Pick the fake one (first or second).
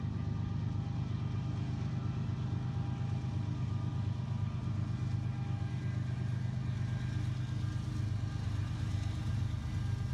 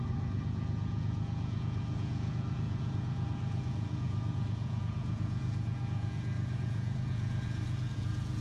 second